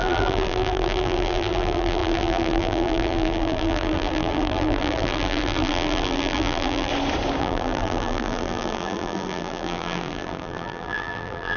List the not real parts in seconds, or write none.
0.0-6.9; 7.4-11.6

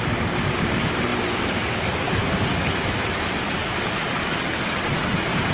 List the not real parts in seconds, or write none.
0.0-1.1; 3.0-5.5

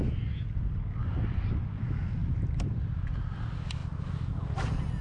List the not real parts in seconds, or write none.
2.2-2.7

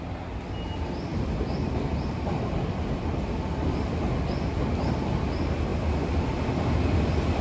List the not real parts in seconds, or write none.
1.1-4.2